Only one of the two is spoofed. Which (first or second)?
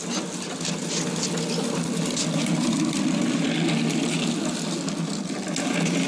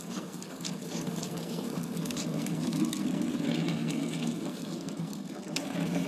second